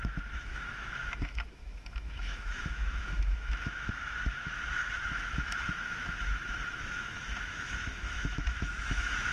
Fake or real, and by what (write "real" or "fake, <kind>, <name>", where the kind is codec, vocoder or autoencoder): fake, autoencoder, DAC-VAE